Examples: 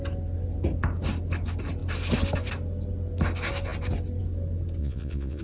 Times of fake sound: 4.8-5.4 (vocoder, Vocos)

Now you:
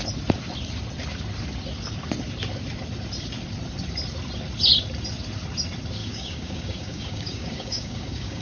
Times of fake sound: 6.0-8.4 (codec, DAC)

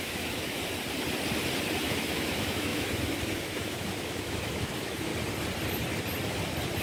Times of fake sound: 0.0-0.6 (autoencoder, DAC-VAE); 1.8-5.1

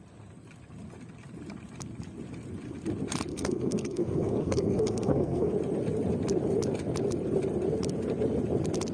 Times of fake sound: 3.3-5.5 (codec, SNAC)

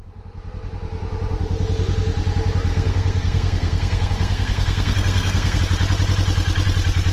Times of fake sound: 2.7-5.6 (codec, SNAC)

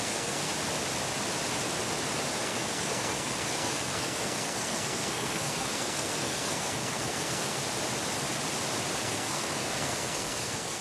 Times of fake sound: 0.0-0.5 (codec, SNAC); 2.4-7.6; 9.0-10.8

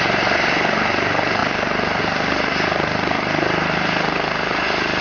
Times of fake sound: none

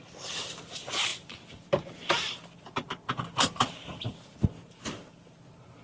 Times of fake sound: none